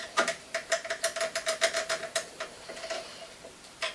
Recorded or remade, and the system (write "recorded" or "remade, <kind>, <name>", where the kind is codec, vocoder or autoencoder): remade, vocoder, BigVGAN v2